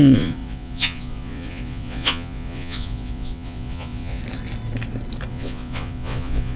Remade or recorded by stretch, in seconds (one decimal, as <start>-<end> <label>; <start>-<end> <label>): 0.0-4.2 remade; 4.2-5.3 recorded; 5.3-6.6 remade